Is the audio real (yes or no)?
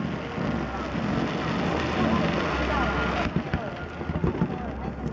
yes